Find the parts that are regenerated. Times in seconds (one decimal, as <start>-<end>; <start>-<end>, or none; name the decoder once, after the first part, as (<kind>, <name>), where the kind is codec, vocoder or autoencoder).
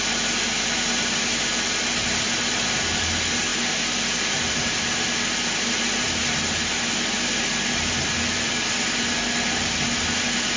none